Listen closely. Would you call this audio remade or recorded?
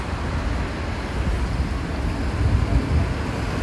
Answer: recorded